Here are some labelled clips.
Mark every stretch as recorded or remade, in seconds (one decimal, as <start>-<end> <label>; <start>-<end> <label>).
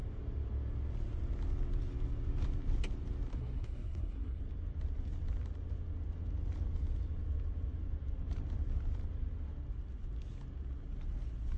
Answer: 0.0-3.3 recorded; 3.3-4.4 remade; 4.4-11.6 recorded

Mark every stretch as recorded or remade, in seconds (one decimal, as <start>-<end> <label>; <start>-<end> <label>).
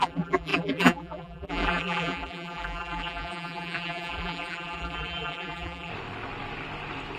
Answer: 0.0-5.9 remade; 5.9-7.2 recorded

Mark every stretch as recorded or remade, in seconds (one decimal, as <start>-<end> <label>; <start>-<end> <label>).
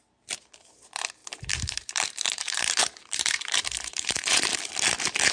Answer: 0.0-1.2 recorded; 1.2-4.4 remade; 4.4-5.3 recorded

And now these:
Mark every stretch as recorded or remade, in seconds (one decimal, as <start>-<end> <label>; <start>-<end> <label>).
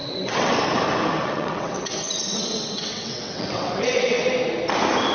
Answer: 0.0-0.6 remade; 0.6-1.2 recorded; 1.2-4.3 remade; 4.3-5.1 recorded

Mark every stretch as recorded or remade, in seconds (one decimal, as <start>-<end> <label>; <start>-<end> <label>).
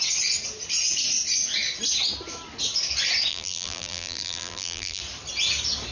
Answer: 0.0-3.3 recorded; 3.3-5.0 remade; 5.0-5.9 recorded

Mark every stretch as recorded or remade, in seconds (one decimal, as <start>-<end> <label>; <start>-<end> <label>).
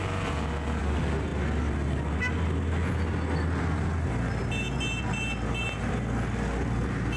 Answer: 0.0-7.2 recorded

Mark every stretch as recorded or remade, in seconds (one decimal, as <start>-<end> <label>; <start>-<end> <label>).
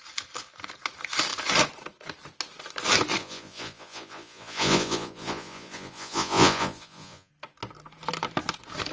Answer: 0.0-3.2 recorded; 3.2-7.3 remade; 7.3-8.9 recorded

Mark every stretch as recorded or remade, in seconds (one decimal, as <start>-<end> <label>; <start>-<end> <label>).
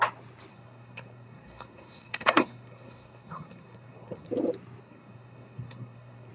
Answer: 0.0-0.5 recorded; 0.5-4.3 remade; 4.3-4.8 recorded; 4.8-6.3 remade